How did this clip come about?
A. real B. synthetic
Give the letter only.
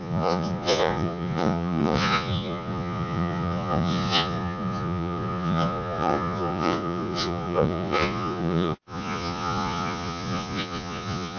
B